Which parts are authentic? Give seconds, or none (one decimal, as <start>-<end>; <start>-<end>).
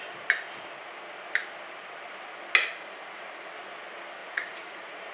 0.0-2.7; 3.5-4.2